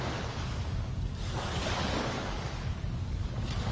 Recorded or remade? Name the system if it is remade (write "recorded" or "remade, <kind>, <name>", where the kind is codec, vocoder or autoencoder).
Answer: remade, codec, DAC